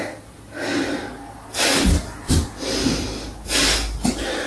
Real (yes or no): yes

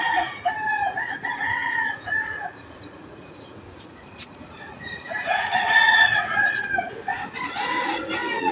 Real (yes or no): no